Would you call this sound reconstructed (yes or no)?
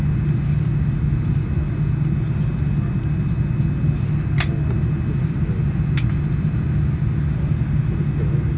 no